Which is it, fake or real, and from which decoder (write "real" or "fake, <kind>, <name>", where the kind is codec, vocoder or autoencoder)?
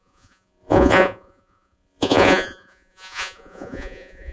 fake, vocoder, Vocos